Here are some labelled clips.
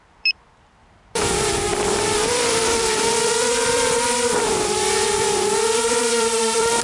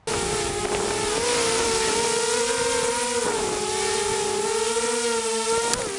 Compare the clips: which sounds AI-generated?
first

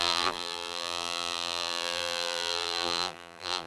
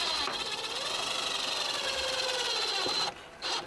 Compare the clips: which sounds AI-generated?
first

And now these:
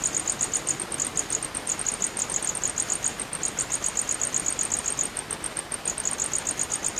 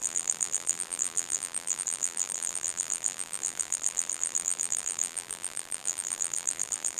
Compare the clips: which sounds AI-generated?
second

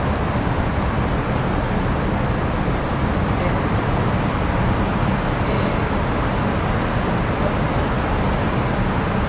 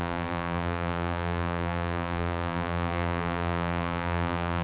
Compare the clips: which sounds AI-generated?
second